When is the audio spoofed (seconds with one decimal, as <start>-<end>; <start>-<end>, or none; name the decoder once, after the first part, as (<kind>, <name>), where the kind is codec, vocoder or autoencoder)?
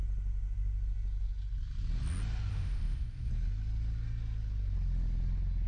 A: 2.5-3.3 (autoencoder, DAC-VAE)